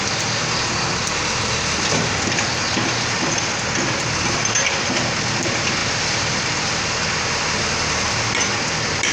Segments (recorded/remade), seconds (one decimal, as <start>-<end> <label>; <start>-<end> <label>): 0.0-9.1 recorded